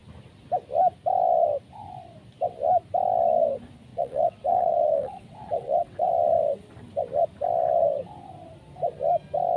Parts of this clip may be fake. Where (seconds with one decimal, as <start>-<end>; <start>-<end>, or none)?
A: 3.9-6.1